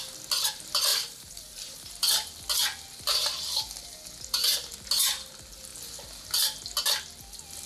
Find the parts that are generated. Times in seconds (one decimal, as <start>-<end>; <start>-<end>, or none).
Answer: 0.9-2.0

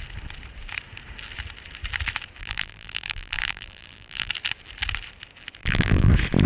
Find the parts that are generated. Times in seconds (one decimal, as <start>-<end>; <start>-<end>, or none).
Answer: 2.4-4.3; 5.6-6.1

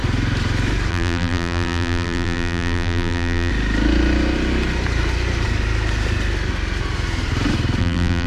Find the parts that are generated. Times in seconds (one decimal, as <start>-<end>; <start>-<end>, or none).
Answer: 0.9-3.5; 7.8-8.3

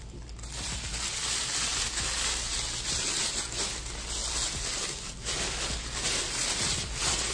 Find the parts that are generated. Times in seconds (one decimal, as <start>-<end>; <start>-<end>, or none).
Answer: none